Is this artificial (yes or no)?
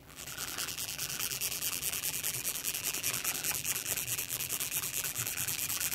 yes